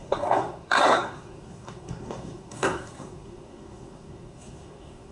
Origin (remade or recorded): remade